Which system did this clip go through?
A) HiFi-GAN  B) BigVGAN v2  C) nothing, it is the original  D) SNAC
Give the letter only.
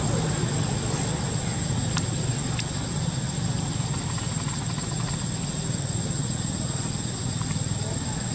C